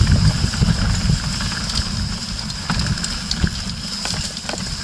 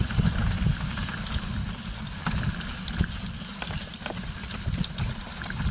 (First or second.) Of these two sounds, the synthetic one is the second